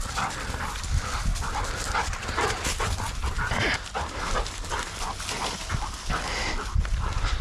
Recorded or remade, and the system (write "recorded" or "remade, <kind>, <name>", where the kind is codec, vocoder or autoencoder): recorded